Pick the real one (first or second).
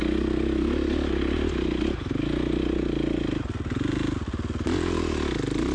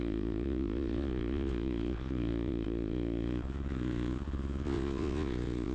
first